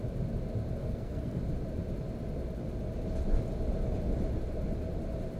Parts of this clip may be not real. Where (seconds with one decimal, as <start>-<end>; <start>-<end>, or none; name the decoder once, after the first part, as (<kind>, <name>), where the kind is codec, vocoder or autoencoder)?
0.8-1.4 (codec, SNAC)